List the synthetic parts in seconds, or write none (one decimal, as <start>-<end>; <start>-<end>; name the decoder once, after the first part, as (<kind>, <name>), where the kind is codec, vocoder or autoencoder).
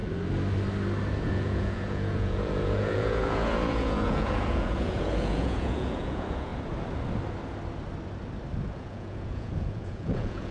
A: 1.2-6.5 (vocoder, Vocos); 8.7-10.5